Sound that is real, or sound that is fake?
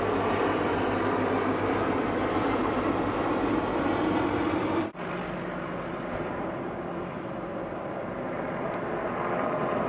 real